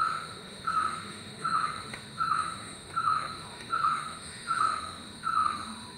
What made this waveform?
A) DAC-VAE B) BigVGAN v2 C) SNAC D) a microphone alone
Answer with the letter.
A